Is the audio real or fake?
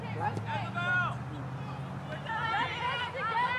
real